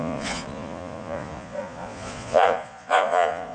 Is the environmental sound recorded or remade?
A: remade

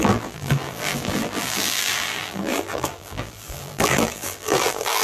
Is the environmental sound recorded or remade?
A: remade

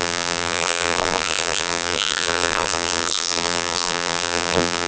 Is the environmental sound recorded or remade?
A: remade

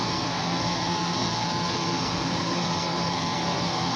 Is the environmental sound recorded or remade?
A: remade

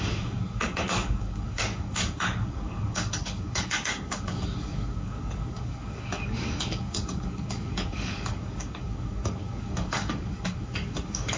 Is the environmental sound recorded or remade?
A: remade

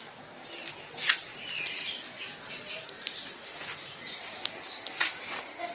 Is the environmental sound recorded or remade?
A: recorded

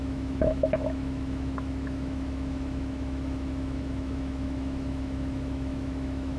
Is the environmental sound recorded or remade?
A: remade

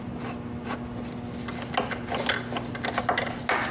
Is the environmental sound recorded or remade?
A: recorded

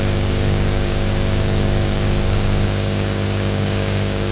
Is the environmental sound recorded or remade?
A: remade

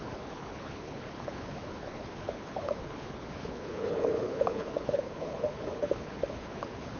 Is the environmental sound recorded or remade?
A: remade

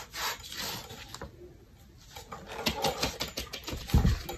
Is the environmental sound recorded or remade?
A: recorded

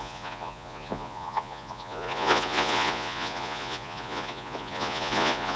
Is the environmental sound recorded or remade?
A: remade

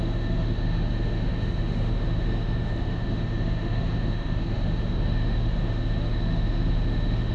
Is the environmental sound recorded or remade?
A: remade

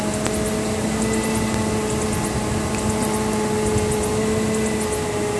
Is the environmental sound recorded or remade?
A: recorded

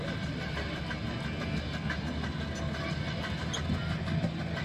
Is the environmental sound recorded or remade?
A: recorded